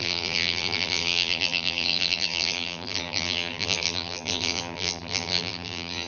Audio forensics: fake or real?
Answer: fake